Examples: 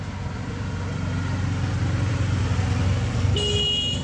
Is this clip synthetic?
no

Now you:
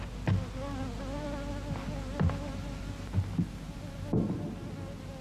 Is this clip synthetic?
no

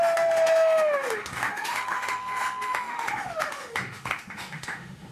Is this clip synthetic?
yes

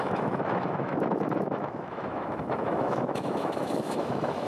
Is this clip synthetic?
yes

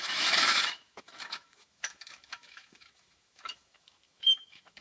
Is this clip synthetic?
yes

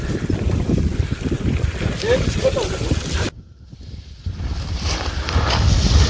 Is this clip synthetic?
no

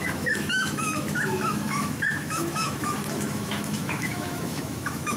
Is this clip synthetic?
yes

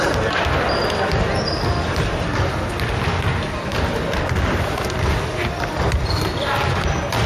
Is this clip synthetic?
no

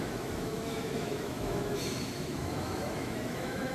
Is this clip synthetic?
yes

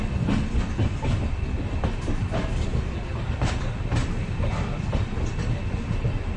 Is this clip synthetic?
no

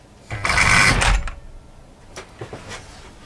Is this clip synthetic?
no